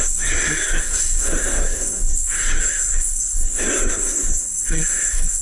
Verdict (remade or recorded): remade